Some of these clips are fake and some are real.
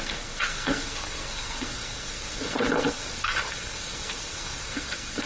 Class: fake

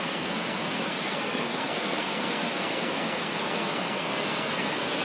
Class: fake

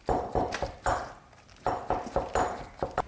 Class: real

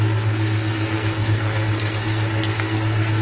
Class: fake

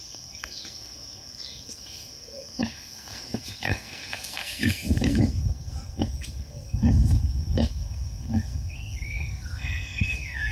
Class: fake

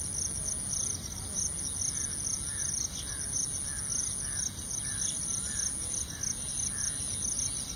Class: real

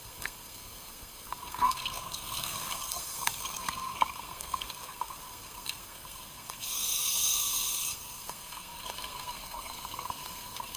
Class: fake